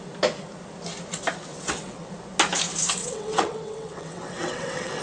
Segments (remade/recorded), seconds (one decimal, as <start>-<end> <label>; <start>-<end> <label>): 0.0-1.5 recorded; 1.5-2.1 remade; 2.1-3.0 recorded; 3.0-5.0 remade